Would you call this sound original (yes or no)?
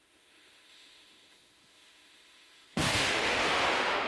no